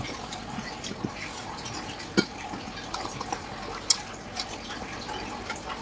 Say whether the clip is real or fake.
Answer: real